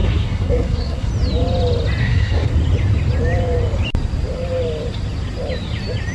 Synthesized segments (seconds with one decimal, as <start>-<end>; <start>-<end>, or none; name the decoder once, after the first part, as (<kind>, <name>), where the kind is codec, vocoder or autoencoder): 0.0-1.1 (codec, SNAC); 2.0-2.5